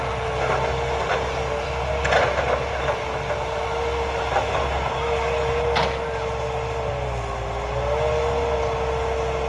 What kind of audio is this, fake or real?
real